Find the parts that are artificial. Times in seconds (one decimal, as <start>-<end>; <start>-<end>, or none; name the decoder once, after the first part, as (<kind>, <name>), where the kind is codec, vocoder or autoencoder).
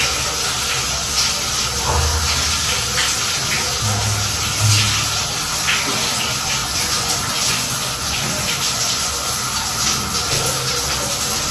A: 6.6-9.3 (vocoder, Vocos)